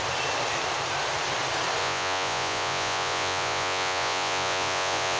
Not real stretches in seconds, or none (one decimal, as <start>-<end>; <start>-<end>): 1.8-5.2

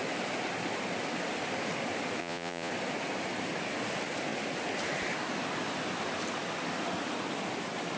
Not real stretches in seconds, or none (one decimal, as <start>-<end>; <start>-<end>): 2.2-2.7

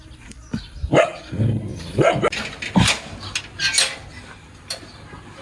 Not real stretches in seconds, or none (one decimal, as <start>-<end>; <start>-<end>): none

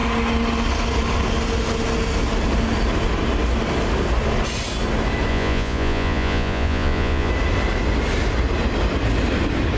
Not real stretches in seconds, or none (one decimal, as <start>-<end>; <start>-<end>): 5.3-7.3

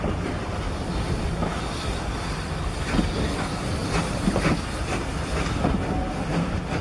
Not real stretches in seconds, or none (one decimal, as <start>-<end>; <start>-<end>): none

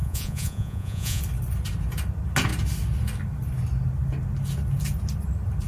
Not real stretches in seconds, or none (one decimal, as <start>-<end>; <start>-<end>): 0.0-1.2

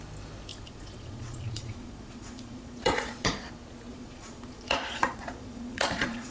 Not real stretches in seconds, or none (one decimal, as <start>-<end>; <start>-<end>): 0.5-3.5; 3.9-6.3